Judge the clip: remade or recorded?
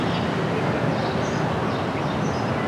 recorded